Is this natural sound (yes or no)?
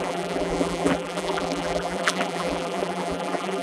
no